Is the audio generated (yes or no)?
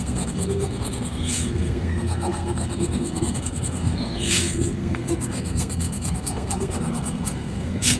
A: yes